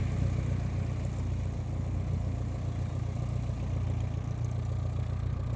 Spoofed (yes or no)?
no